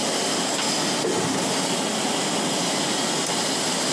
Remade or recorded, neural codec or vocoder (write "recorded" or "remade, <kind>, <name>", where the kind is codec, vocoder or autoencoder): recorded